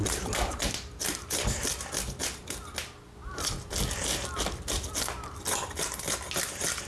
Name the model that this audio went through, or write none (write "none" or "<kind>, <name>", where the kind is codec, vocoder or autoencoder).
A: none